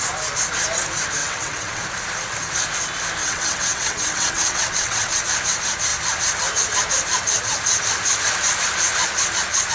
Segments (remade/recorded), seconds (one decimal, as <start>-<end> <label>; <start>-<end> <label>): 0.0-1.2 recorded; 1.2-1.8 remade; 1.8-3.2 recorded; 3.2-5.2 remade; 5.2-9.7 recorded